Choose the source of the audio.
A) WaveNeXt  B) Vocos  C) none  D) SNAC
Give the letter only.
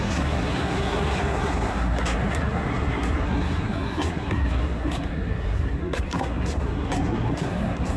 D